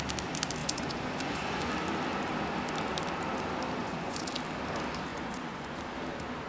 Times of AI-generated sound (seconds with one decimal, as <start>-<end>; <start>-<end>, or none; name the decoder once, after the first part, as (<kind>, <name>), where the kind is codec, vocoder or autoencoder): 0.6-1.7 (vocoder, Vocos); 3.8-4.3; 5.1-5.8